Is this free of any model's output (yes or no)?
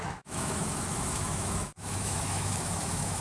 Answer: no